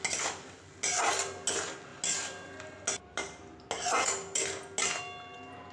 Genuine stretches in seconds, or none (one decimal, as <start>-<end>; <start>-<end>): 0.0-5.7